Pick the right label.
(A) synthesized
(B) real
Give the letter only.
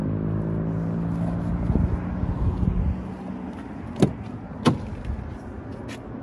B